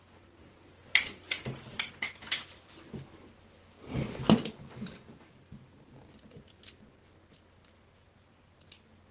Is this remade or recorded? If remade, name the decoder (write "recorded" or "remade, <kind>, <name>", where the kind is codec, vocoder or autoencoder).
recorded